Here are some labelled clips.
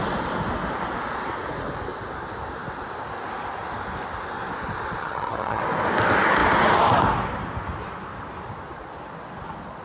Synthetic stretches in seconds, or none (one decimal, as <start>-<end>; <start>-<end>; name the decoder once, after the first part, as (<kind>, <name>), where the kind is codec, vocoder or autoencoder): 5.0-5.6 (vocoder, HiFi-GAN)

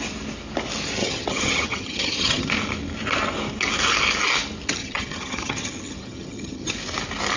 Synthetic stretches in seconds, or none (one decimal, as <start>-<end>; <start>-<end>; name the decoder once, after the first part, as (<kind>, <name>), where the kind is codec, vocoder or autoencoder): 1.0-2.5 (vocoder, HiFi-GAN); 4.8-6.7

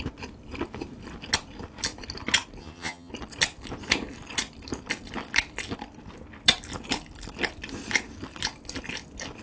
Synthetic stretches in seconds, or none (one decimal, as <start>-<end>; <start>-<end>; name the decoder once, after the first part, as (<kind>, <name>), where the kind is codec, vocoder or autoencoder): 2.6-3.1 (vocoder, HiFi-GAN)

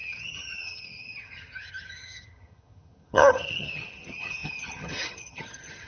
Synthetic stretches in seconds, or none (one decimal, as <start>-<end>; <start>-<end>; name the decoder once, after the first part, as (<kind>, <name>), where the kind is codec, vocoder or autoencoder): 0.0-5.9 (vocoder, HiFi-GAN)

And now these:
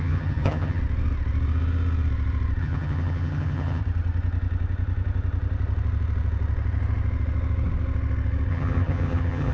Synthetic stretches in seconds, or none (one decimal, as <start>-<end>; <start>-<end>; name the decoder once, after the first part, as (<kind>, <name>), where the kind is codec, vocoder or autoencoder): 0.0-0.8 (vocoder, HiFi-GAN); 2.6-3.8; 8.5-9.5

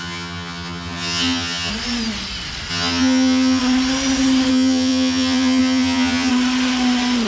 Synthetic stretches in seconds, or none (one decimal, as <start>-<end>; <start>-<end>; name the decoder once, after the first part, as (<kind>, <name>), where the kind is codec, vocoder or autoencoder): 0.0-1.7 (vocoder, HiFi-GAN); 2.7-3.6; 4.5-6.3

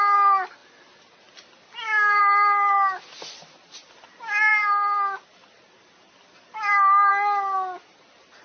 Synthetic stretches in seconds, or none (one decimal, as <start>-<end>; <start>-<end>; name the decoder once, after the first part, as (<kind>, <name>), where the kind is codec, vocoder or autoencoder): none

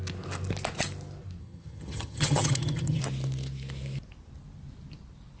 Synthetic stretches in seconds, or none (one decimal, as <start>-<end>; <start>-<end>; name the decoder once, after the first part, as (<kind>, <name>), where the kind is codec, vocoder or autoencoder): 1.4-3.0 (vocoder, HiFi-GAN)